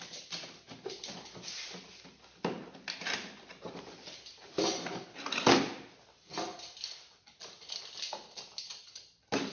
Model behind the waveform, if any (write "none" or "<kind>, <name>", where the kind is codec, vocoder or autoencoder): none